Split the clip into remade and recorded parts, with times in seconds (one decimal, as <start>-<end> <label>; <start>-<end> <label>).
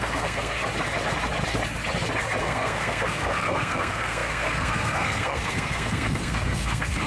0.0-0.6 remade; 0.6-2.4 recorded; 2.4-7.1 remade